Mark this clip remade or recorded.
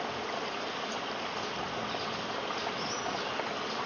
recorded